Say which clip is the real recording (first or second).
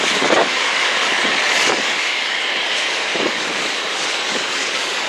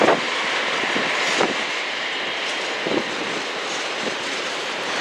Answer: second